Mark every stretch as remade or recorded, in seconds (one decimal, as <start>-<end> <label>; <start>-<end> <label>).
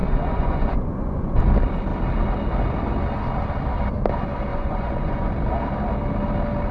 0.0-1.4 remade; 1.4-4.5 recorded; 4.5-5.3 remade; 5.3-6.7 recorded